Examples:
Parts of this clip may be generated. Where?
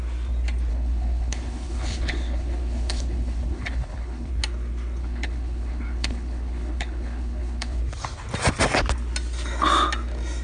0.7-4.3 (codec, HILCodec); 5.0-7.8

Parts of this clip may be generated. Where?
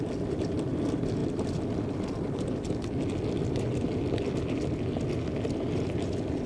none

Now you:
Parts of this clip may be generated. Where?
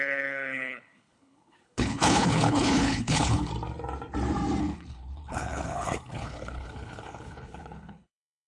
0.0-3.5 (codec, HILCodec); 4.6-8.5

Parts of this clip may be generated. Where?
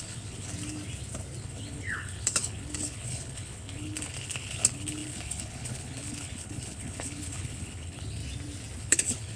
0.0-0.5 (codec, HILCodec); 1.4-8.2; 8.8-9.4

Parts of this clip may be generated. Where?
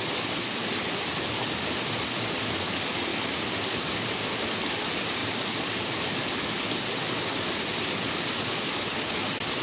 none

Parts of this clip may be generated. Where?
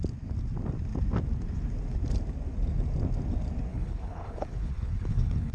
3.7-5.5 (codec, HILCodec)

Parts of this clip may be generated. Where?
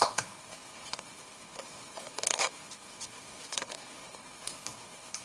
0.0-5.2 (codec, HILCodec)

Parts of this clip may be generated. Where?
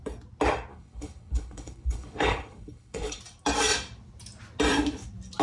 0.7-3.2 (codec, HILCodec)